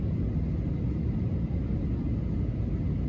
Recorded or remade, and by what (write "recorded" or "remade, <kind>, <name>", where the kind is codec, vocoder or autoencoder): recorded